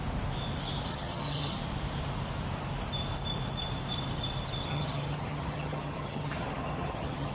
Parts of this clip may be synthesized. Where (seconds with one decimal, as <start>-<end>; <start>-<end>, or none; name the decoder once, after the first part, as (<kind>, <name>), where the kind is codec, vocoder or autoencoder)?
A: 0.9-1.6 (vocoder, HiFi-GAN); 4.7-7.3